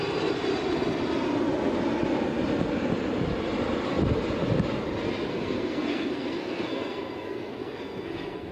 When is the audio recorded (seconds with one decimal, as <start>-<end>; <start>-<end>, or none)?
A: 0.0-5.3